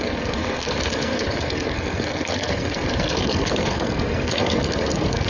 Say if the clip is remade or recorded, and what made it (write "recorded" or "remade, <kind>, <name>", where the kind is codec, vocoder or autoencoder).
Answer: remade, codec, SNAC